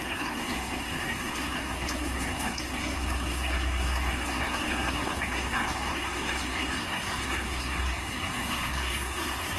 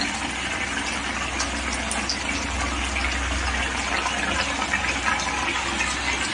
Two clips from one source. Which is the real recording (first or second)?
second